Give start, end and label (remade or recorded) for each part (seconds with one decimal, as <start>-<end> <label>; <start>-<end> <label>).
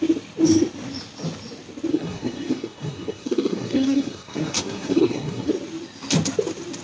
0.0-1.9 recorded; 1.9-5.5 remade; 5.5-6.8 recorded